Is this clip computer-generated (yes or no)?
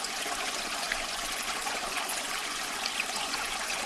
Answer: yes